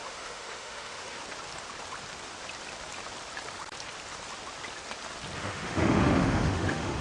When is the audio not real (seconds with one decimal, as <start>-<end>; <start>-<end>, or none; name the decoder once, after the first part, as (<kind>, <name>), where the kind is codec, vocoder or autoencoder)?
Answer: 0.0-1.2 (autoencoder, DAC-VAE); 5.4-7.0